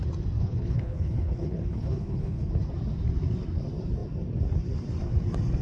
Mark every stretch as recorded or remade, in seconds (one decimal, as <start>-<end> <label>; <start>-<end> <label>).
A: 0.0-0.4 recorded; 0.4-2.5 remade; 2.5-5.6 recorded